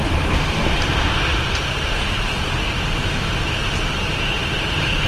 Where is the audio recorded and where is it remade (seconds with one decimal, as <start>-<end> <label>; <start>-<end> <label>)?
0.0-5.1 recorded